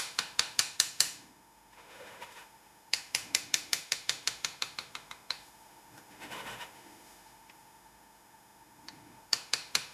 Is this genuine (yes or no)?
no